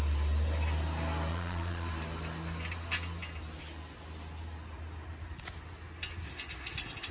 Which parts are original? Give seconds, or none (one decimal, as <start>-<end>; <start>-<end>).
0.0-1.3; 1.9-7.1